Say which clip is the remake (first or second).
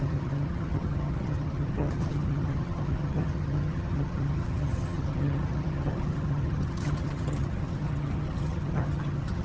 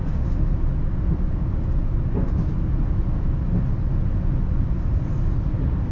first